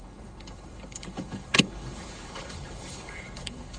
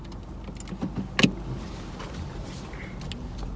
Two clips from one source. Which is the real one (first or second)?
second